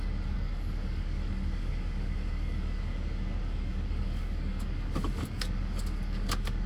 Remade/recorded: remade